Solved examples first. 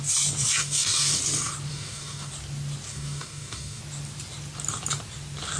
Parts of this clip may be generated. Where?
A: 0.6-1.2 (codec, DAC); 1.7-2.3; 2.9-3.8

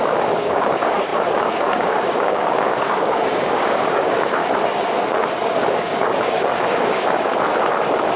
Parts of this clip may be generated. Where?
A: 0.0-4.4 (codec, DAC); 5.7-7.3

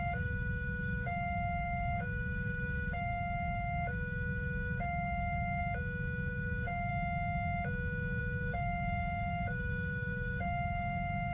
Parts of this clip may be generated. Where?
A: 0.0-5.6 (codec, DAC); 6.3-6.9; 8.2-11.3

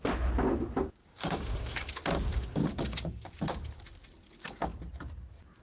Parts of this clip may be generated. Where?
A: 1.0-1.9 (codec, DAC); 2.3-3.3

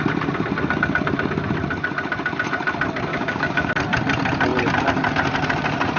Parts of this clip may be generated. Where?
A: 3.1-3.7 (codec, DAC)